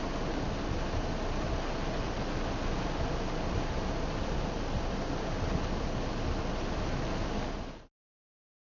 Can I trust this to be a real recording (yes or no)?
yes